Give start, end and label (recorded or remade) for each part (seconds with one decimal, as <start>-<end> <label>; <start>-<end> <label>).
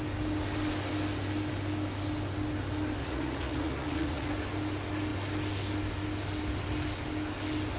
0.0-3.0 recorded; 3.0-4.3 remade; 4.3-7.8 recorded